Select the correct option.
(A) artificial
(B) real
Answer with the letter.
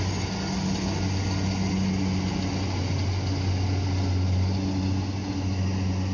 B